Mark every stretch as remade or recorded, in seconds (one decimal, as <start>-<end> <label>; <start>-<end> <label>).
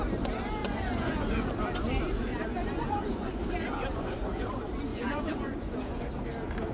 0.0-0.6 recorded; 0.6-1.5 remade; 1.5-2.5 recorded; 2.5-3.4 remade; 3.4-3.9 recorded; 3.9-4.5 remade; 4.5-4.9 recorded; 4.9-6.0 remade; 6.0-6.7 recorded